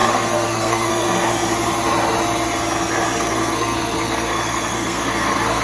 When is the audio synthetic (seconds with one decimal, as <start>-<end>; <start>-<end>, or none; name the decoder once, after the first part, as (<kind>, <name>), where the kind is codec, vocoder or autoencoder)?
0.0-1.3 (codec, SNAC); 3.2-5.6